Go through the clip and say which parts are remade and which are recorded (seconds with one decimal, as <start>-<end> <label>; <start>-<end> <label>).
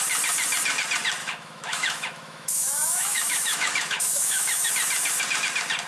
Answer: 0.0-1.2 recorded; 1.2-4.7 remade; 4.7-5.9 recorded